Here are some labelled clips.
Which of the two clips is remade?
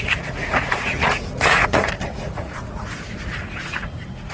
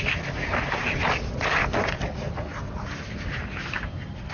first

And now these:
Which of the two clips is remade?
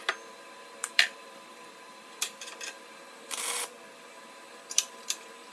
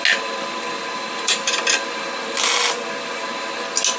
first